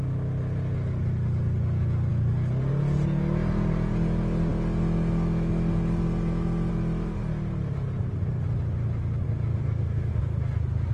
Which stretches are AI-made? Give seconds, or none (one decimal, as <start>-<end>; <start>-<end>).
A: 9.5-10.4